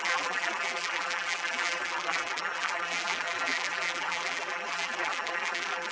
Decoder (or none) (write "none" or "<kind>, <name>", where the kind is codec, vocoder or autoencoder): vocoder, BigVGAN v2